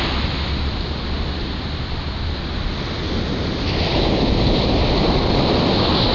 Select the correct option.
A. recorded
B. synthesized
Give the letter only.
A